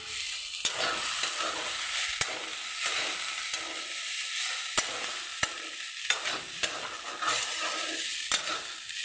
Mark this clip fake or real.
real